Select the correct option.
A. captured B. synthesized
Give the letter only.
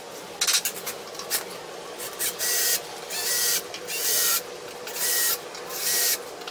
A